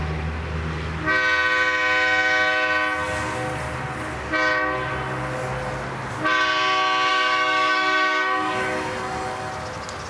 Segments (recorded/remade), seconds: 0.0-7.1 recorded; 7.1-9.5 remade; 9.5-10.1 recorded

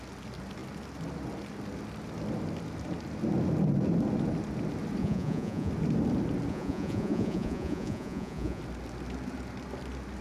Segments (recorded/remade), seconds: 0.0-5.0 recorded; 5.0-5.7 remade; 5.7-6.5 recorded; 6.5-8.6 remade; 8.6-10.2 recorded

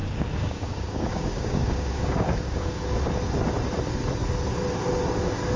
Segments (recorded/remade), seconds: 0.0-2.8 remade; 2.8-5.6 recorded

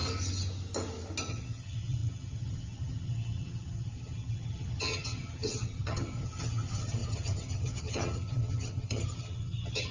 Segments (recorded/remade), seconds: 0.0-1.3 recorded; 1.3-9.9 remade

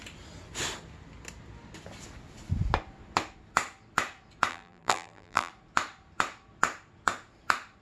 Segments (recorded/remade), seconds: 0.0-4.5 recorded; 4.5-5.5 remade; 5.5-7.8 recorded